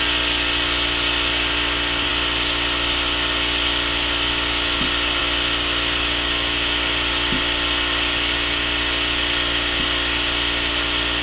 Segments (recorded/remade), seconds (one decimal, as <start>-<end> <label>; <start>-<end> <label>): 0.0-11.2 recorded